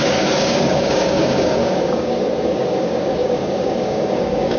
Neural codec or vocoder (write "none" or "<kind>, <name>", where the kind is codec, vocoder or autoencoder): codec, DAC